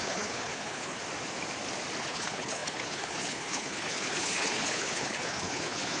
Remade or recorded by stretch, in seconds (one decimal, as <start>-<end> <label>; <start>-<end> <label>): 0.0-1.0 remade; 1.0-2.0 recorded; 2.0-6.0 remade